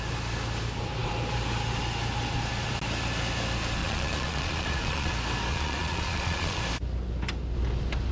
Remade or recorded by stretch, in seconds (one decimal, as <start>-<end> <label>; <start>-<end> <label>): 0.0-3.8 recorded; 3.8-5.1 remade; 5.1-5.5 recorded; 5.5-6.6 remade; 6.6-8.1 recorded